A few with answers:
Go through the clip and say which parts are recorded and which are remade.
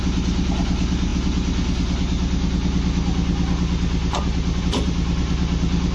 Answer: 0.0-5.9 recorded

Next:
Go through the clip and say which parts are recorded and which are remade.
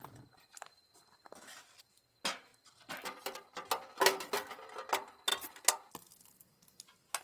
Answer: 0.0-7.2 recorded